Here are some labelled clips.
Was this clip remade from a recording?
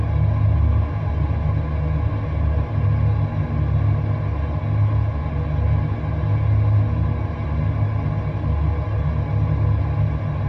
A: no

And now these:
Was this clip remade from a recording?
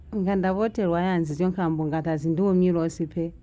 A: no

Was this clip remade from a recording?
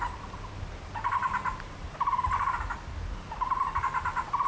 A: no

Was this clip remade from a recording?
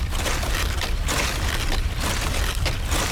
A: no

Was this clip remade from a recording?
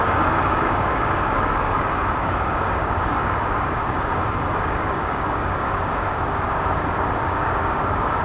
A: yes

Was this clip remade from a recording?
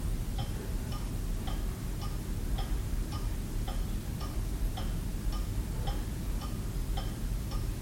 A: no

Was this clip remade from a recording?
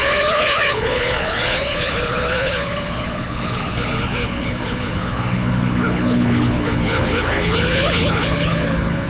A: yes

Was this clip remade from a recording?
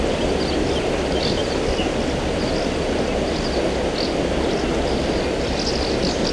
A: no